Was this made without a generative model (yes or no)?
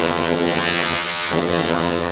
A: no